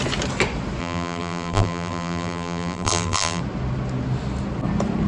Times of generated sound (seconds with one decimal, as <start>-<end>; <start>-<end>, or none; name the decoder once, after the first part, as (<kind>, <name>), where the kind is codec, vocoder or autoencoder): 0.8-3.4 (vocoder, BigVGAN v2)